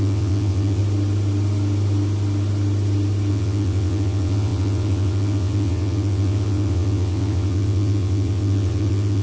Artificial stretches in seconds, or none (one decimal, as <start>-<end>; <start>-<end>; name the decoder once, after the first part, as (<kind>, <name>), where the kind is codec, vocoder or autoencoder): 0.0-0.8 (vocoder, WaveNeXt); 3.3-9.2

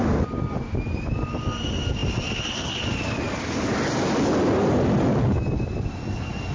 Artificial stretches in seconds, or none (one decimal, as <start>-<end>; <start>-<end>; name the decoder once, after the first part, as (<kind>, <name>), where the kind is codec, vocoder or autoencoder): none

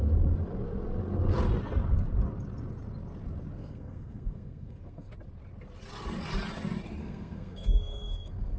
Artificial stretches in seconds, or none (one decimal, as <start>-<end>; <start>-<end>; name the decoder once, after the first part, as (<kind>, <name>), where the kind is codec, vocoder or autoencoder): 3.6-5.1 (codec, SNAC); 7.0-8.6

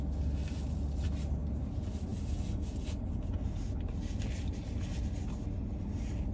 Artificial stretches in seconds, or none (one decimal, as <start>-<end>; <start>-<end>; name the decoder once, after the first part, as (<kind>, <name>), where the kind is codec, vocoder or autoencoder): none

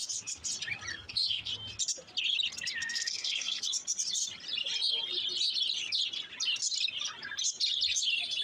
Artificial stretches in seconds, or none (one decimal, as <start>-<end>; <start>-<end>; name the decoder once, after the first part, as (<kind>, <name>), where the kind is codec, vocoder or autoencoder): 0.9-1.5 (codec, SNAC); 2.8-3.6